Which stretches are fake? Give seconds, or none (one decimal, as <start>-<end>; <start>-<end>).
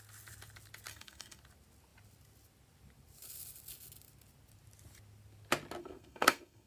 0.9-1.4; 5.8-6.7